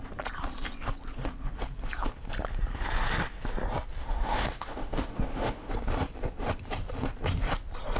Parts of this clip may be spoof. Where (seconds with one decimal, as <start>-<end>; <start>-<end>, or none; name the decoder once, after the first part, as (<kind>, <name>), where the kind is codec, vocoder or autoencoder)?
4.0-5.7 (autoencoder, DAC-VAE)